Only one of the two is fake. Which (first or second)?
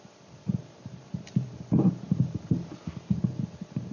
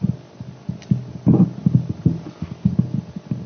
first